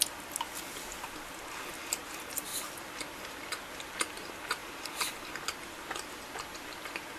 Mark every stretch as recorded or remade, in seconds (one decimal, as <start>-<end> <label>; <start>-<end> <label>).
0.0-7.2 recorded